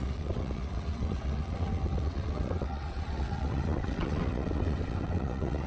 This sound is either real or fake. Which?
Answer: fake